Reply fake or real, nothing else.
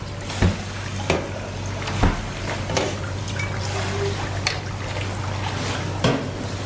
real